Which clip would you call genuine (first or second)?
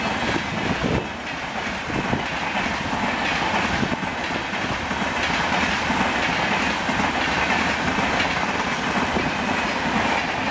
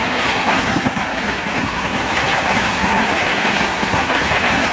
first